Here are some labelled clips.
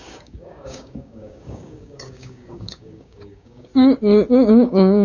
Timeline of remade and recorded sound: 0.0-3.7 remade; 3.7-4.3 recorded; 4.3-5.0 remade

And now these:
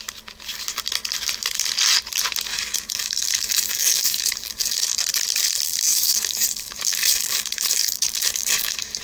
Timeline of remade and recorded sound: 0.0-2.5 recorded; 2.5-5.0 remade; 5.0-5.9 recorded; 5.9-9.0 remade

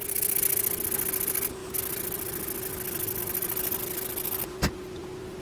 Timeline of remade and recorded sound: 0.0-5.4 recorded

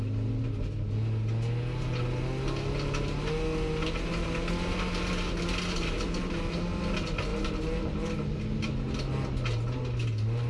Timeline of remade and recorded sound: 0.0-10.5 recorded

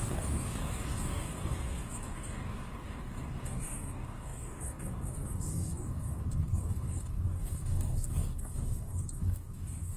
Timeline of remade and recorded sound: 0.0-10.0 remade

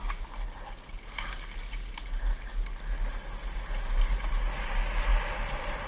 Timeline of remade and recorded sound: 0.0-5.9 recorded

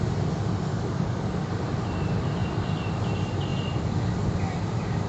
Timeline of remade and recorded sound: 0.0-0.7 recorded; 0.7-1.5 remade; 1.5-5.1 recorded